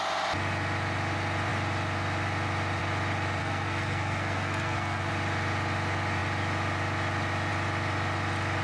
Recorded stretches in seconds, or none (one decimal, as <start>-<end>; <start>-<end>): 0.0-3.4; 5.1-8.6